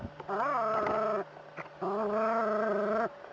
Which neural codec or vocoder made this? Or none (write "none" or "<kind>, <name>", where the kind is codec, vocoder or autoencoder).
none